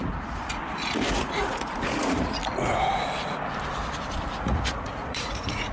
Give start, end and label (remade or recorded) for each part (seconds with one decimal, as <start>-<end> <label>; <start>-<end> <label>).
0.0-0.6 remade; 0.6-1.1 recorded; 1.1-2.4 remade; 2.4-4.4 recorded; 4.4-5.7 remade